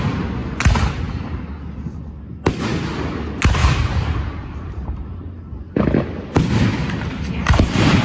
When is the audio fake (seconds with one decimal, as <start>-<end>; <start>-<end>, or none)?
3.6-5.5; 6.8-8.0